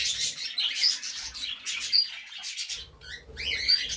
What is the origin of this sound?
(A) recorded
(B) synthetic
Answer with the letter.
A